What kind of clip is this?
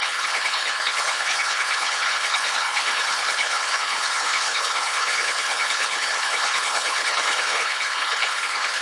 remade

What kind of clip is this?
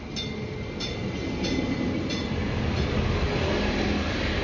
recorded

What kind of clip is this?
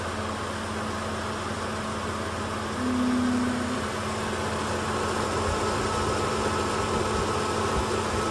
recorded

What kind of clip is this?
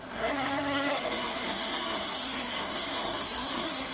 remade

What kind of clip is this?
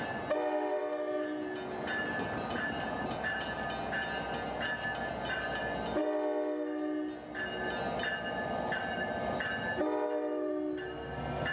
recorded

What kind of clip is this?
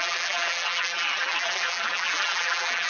remade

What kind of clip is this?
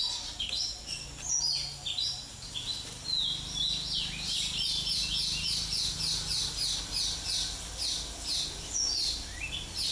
recorded